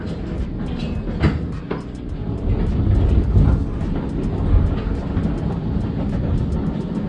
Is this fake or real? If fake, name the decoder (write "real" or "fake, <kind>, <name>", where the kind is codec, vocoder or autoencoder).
real